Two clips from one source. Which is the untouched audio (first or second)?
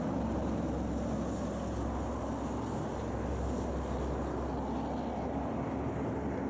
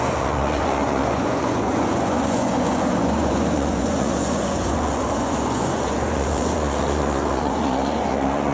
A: first